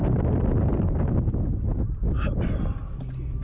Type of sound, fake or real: real